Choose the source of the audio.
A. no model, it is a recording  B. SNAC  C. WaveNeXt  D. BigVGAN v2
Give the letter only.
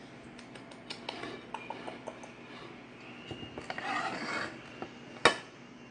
A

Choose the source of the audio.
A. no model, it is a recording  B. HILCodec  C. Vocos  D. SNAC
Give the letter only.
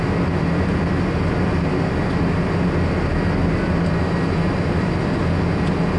A